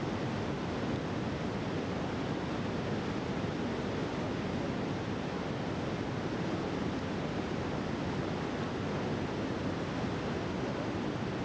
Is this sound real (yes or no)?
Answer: yes